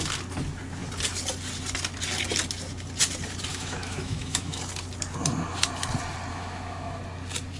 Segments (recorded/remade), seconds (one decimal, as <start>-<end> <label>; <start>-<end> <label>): 0.0-3.5 recorded; 3.5-4.6 remade; 4.6-6.3 recorded; 6.3-7.0 remade; 7.0-7.6 recorded